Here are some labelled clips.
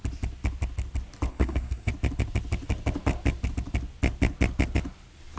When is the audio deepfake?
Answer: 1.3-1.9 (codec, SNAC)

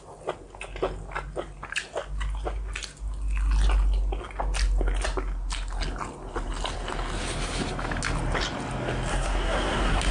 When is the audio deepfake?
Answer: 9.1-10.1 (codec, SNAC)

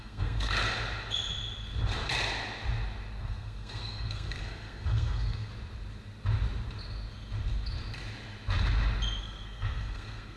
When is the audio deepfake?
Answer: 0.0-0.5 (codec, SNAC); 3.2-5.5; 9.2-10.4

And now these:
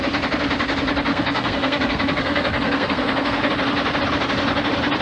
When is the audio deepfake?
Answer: 1.1-3.5 (codec, SNAC)

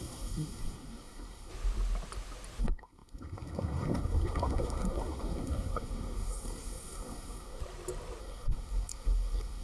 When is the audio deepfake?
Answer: 0.0-1.5 (codec, SNAC); 2.6-7.6; 8.2-9.6